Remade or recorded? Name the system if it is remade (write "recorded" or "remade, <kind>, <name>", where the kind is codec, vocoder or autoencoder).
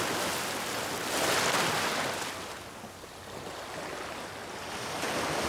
recorded